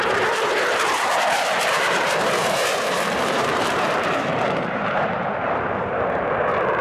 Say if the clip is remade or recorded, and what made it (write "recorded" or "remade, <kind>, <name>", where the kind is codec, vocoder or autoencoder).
remade, vocoder, BigVGAN v2